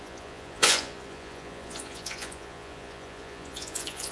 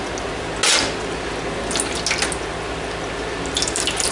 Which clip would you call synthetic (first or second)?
first